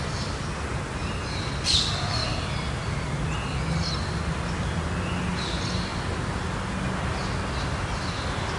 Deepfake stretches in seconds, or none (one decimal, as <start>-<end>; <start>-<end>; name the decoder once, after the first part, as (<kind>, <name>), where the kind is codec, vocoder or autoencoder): none